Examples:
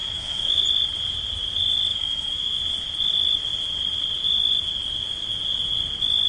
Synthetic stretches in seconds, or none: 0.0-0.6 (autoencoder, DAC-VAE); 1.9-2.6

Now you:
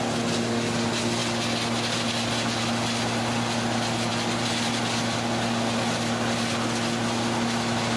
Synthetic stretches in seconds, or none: none

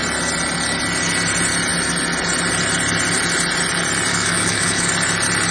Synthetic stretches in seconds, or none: 4.1-4.9 (codec, DAC)

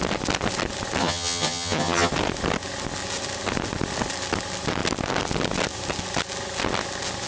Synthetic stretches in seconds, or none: 1.0-2.1 (vocoder, HiFi-GAN)

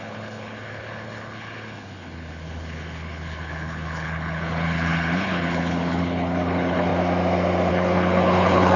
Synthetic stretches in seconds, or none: 0.0-6.9 (codec, HILCodec); 7.7-8.8

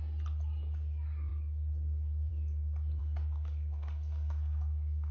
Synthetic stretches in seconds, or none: 3.0-5.1 (codec, SNAC)